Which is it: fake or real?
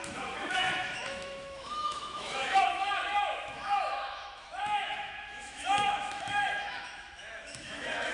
fake